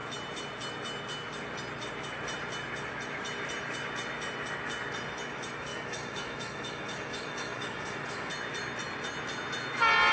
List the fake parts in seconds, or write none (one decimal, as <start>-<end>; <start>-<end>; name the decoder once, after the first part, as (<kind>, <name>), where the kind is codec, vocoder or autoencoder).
5.7-8.3 (autoencoder, DAC-VAE)